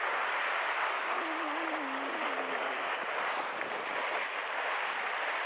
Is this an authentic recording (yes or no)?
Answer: yes